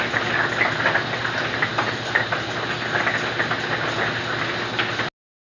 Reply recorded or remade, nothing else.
recorded